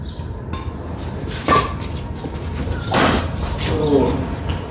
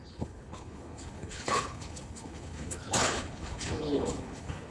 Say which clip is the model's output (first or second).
second